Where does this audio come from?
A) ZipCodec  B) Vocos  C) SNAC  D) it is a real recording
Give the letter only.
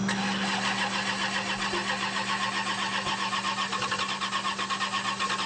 D